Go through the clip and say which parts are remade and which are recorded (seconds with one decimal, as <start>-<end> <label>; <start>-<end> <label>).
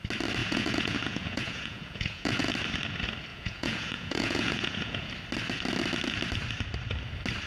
0.0-0.4 recorded; 0.4-2.5 remade; 2.5-3.3 recorded; 3.3-5.1 remade; 5.1-7.5 recorded